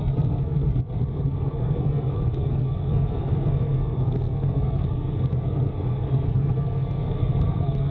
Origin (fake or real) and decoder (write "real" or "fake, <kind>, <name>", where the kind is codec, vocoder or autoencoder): fake, codec, SNAC